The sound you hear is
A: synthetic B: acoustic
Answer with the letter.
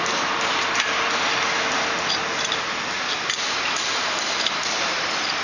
A